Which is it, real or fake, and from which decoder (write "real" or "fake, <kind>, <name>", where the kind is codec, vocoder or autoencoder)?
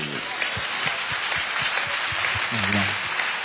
real